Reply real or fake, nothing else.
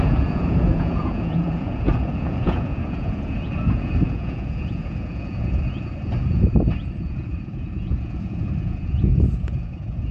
fake